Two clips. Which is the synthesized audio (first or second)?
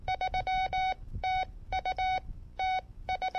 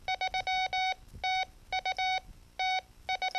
first